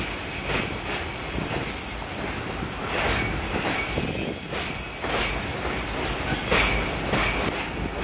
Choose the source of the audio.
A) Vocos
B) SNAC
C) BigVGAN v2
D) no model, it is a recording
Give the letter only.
D